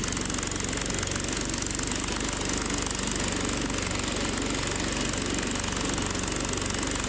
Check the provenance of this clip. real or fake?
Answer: real